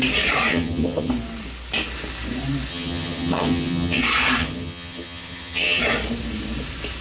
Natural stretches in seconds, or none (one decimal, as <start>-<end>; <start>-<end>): 0.0-0.5; 1.1-2.7; 4.0-4.4; 5.8-7.0